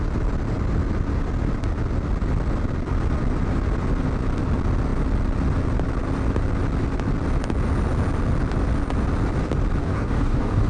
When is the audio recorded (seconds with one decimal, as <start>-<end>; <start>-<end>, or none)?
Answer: 0.0-9.8